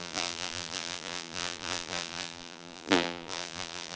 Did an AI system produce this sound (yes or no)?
yes